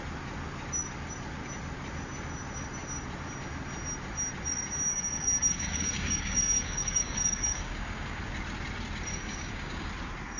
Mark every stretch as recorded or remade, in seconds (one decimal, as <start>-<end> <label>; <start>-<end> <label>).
0.0-4.9 recorded; 4.9-8.2 remade; 8.2-9.1 recorded; 9.1-9.9 remade; 9.9-10.4 recorded